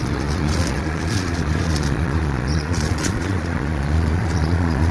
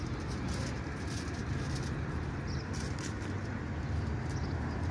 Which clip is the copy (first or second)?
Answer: first